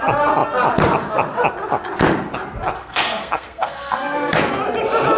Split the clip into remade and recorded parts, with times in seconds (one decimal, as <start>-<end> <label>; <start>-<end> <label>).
0.0-2.8 recorded; 2.8-4.4 remade; 4.4-5.2 recorded